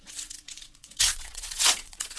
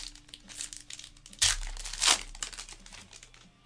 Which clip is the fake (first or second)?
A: first